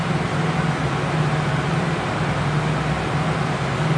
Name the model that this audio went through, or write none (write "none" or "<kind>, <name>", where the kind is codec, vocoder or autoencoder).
none